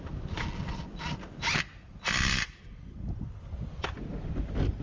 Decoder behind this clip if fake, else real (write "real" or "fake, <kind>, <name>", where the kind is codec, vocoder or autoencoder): real